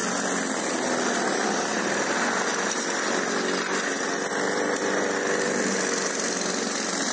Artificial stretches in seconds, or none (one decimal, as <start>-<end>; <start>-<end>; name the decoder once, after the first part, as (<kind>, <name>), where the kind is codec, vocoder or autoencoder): none